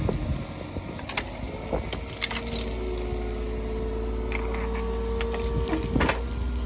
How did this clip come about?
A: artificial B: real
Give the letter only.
B